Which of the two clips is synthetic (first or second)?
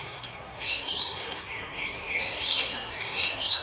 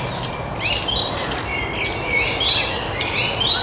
first